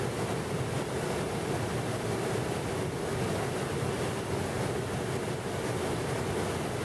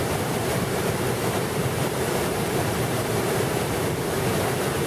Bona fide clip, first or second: first